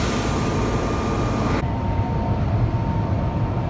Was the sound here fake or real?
real